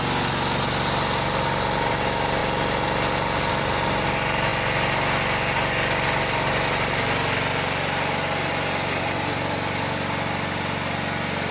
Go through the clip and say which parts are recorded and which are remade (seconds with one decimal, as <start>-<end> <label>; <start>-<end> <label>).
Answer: 0.0-11.5 recorded